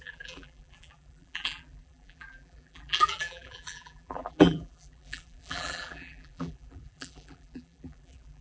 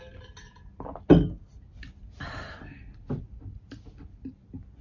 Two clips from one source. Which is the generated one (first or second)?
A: first